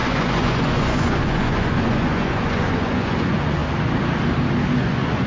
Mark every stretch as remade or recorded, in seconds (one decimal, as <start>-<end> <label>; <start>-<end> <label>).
0.0-3.6 remade; 3.6-4.8 recorded; 4.8-5.3 remade